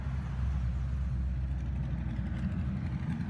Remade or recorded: recorded